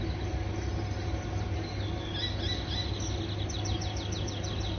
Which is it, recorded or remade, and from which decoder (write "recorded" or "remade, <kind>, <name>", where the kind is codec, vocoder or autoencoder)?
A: recorded